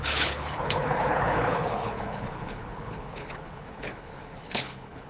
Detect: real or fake fake